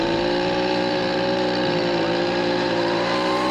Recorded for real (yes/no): no